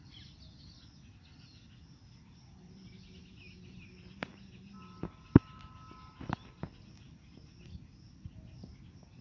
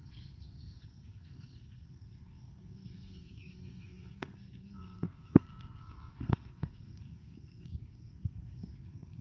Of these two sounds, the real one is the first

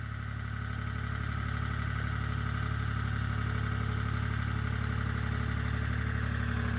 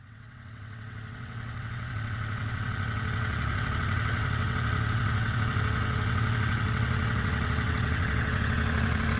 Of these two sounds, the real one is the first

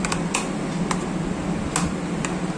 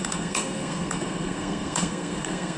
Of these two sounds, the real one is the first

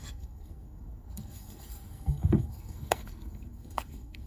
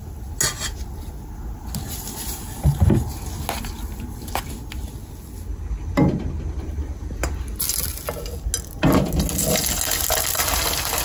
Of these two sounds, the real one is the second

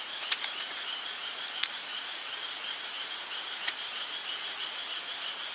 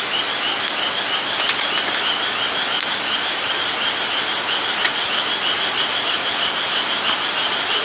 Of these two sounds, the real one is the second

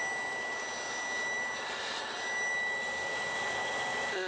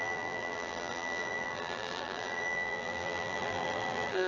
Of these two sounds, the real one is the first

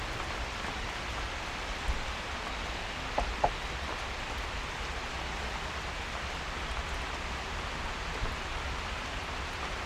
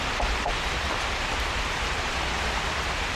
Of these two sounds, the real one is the first